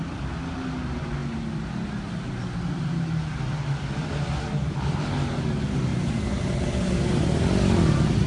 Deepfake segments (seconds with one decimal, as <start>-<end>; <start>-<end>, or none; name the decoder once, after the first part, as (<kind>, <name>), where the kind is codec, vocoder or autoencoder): none